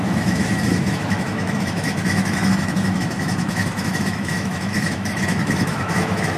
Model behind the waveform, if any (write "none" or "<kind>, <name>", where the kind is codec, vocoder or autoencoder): autoencoder, DAC-VAE